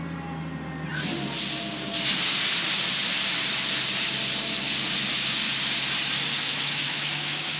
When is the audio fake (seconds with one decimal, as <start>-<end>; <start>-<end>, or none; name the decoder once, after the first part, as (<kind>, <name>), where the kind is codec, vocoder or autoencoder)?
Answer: 6.3-7.6 (autoencoder, DAC-VAE)